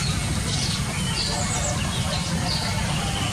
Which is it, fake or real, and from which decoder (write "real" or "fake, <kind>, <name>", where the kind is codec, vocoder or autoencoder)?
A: real